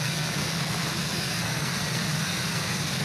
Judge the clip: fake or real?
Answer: fake